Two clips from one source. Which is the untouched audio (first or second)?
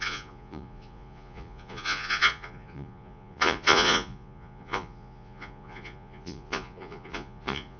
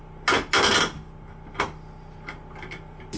second